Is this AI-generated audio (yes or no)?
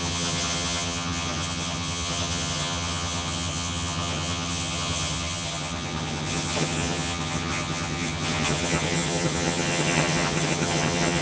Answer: yes